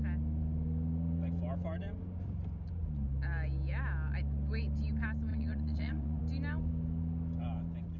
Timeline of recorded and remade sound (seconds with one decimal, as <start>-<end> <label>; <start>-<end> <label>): 0.0-5.3 recorded; 5.3-6.2 remade; 6.2-8.0 recorded